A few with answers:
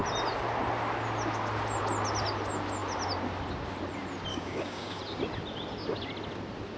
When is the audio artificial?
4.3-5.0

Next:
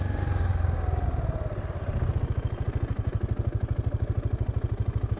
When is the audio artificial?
none

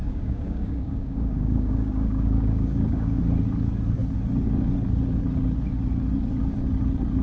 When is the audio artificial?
0.0-3.2